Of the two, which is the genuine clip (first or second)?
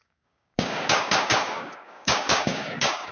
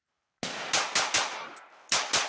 second